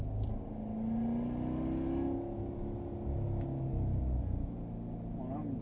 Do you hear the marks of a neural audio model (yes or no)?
no